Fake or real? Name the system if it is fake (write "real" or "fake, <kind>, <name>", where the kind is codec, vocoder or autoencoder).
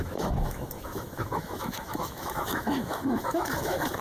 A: fake, autoencoder, DAC-VAE